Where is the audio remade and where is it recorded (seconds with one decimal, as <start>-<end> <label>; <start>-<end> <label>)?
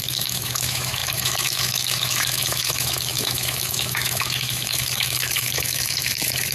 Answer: 0.0-6.5 remade